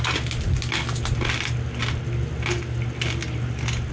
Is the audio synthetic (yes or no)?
no